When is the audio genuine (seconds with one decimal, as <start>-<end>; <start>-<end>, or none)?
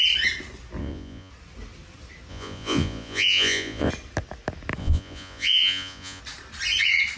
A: 0.0-0.8; 1.3-2.3; 3.9-4.8; 6.2-7.2